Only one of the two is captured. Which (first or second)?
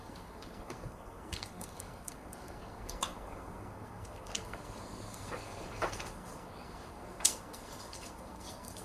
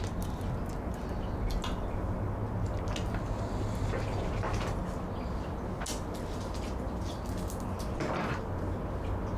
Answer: second